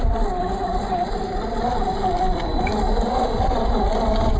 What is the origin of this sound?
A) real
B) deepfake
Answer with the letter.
A